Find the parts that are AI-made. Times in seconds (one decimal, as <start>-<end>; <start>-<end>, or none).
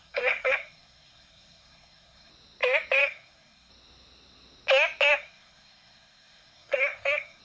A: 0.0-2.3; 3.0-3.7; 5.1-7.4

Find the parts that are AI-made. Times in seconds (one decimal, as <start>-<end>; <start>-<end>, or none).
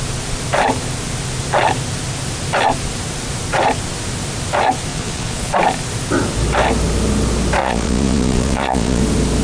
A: 4.9-5.5; 7.6-9.0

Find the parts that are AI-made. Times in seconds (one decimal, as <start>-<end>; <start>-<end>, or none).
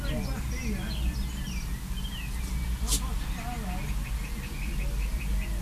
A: none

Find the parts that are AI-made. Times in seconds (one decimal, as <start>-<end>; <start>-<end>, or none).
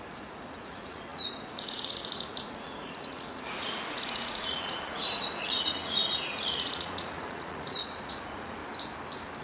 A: 0.0-8.6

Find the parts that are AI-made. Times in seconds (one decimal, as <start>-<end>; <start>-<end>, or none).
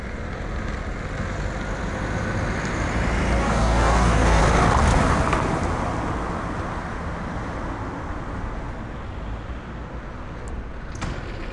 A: 3.4-4.4